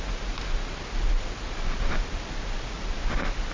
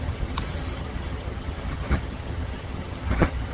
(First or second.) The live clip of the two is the first